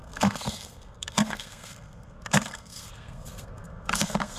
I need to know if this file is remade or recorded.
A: remade